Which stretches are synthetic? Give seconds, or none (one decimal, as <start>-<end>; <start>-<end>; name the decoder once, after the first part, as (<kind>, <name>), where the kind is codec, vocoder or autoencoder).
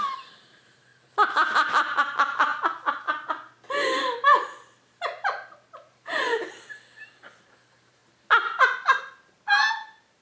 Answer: 0.0-0.9 (vocoder, BigVGAN v2); 1.7-2.5; 5.9-8.0; 9.7-10.2